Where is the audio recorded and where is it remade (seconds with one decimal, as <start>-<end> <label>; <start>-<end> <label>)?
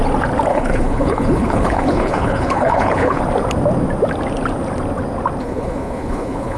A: 0.0-0.5 recorded; 0.5-3.2 remade; 3.2-5.4 recorded; 5.4-6.6 remade